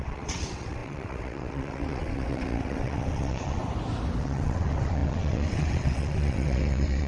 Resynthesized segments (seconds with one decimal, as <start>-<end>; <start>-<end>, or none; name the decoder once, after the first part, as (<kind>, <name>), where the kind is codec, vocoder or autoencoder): 0.0-3.6 (vocoder, WaveNeXt); 4.2-7.1